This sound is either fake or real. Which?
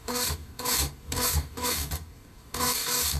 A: fake